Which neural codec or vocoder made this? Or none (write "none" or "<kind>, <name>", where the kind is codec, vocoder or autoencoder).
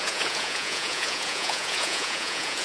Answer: vocoder, Vocos